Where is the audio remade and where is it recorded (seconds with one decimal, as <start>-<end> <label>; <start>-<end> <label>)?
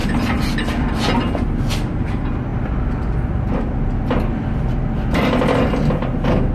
0.0-6.5 recorded